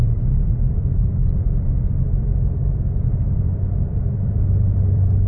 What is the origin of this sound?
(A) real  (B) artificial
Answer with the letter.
B